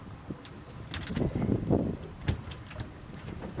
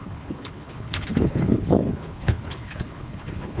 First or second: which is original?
first